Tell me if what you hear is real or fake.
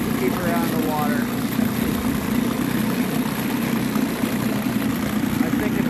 real